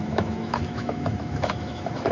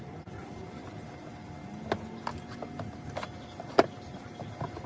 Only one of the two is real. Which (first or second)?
second